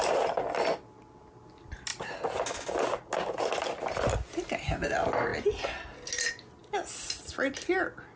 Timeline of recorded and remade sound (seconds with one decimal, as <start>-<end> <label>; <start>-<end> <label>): 0.0-8.2 recorded